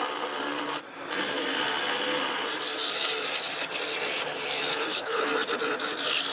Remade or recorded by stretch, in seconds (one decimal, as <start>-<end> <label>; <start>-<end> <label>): 0.0-4.7 recorded; 4.7-5.3 remade; 5.3-6.3 recorded